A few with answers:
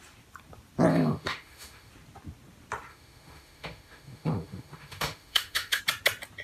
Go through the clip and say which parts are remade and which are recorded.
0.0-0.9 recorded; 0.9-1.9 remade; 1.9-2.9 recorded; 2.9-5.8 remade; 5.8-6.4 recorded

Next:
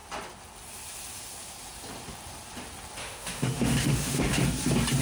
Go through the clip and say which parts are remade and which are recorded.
0.0-3.0 recorded; 3.0-4.4 remade; 4.4-5.0 recorded

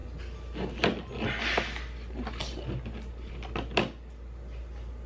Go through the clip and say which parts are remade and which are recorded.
0.0-5.1 recorded

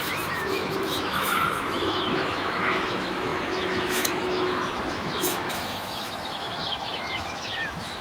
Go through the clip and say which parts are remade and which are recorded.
0.0-8.0 remade

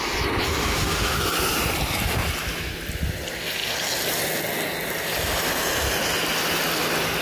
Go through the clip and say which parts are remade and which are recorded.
0.0-0.6 recorded; 0.6-1.2 remade; 1.2-7.2 recorded